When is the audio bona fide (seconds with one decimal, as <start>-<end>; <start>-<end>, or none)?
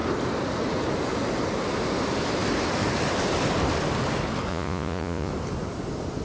0.0-4.5; 5.3-6.2